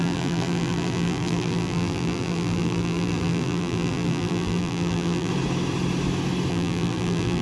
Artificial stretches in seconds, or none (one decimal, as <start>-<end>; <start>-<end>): 0.0-5.3; 6.5-7.4